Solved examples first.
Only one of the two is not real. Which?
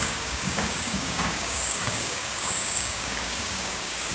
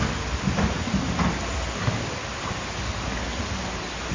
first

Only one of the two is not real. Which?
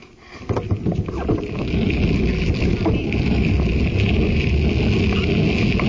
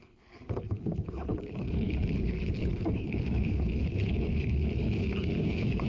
second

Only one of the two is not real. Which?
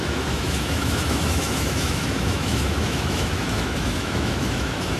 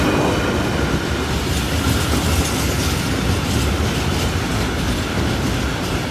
first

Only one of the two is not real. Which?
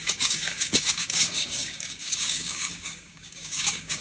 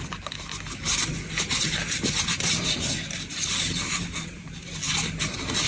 first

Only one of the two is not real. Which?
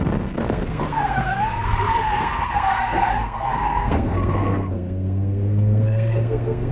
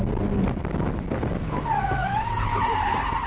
first